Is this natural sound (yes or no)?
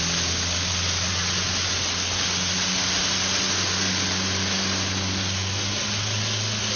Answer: yes